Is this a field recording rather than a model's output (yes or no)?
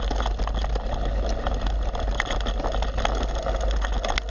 yes